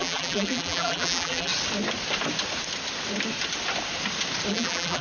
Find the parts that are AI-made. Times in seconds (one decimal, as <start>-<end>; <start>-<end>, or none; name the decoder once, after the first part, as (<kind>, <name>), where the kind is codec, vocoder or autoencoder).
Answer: 0.0-1.5 (vocoder, BigVGAN v2); 4.5-5.0